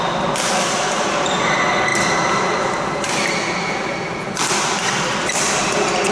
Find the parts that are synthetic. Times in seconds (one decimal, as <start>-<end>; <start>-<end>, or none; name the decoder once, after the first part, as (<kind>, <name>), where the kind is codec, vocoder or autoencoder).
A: none